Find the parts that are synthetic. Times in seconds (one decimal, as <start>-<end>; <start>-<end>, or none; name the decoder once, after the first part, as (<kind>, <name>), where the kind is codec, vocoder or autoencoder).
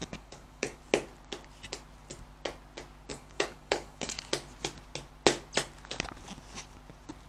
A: 0.0-0.8 (codec, DAC); 3.1-4.2